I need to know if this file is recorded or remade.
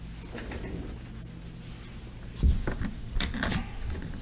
recorded